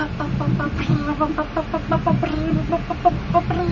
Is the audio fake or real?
real